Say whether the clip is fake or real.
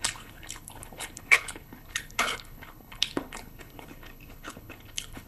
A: fake